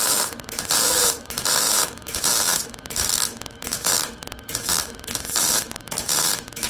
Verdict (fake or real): fake